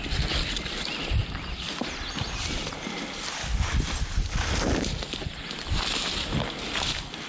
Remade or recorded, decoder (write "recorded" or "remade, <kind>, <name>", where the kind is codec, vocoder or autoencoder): recorded